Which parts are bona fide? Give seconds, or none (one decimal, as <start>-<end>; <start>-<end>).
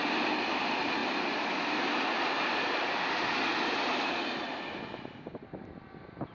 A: 0.0-6.3